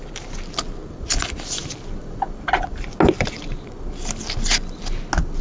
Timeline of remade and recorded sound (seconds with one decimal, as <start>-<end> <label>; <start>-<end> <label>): 0.0-5.4 recorded